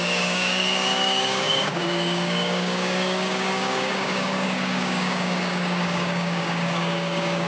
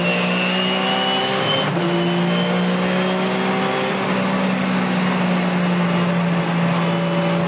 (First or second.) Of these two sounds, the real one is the second